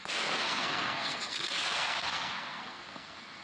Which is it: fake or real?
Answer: fake